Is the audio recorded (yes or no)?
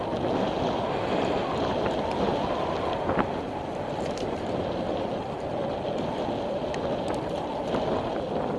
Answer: yes